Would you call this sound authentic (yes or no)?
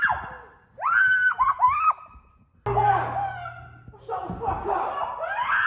yes